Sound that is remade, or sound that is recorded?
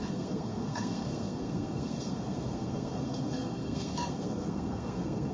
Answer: remade